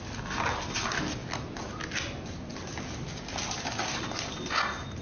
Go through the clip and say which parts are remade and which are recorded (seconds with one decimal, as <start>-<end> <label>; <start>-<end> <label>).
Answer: 0.0-5.0 recorded